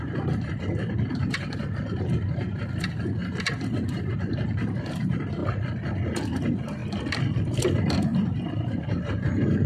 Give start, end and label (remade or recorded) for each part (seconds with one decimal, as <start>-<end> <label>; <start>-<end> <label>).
0.0-5.4 remade; 5.4-6.1 recorded; 6.1-6.8 remade; 6.8-7.6 recorded; 7.6-9.7 remade

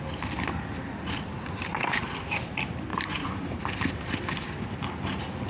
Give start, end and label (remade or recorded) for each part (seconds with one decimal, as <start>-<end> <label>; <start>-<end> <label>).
0.0-1.7 recorded; 1.7-2.3 remade; 2.3-2.9 recorded; 2.9-3.6 remade; 3.6-5.5 recorded

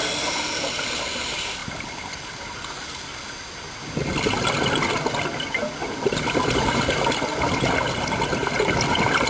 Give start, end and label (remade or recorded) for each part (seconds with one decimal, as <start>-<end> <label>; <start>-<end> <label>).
0.0-5.8 recorded; 5.8-7.2 remade; 7.2-9.3 recorded